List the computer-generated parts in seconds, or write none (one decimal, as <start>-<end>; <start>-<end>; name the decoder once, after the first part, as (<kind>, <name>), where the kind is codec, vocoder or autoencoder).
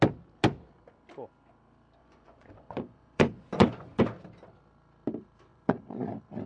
2.0-4.0 (vocoder, Vocos); 5.5-6.1